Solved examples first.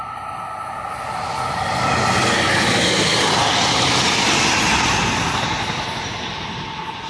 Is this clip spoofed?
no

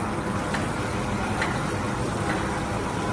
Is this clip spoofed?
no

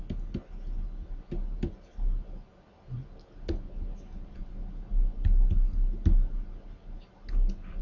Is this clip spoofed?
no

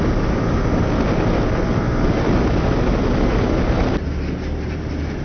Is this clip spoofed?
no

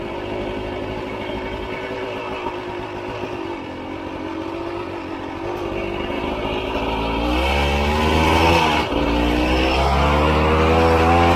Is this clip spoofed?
no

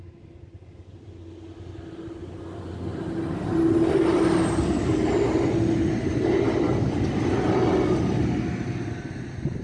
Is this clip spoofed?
no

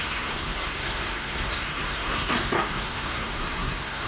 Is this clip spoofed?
yes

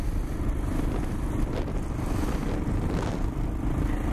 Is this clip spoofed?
no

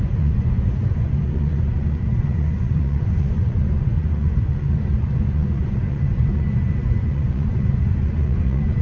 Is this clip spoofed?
yes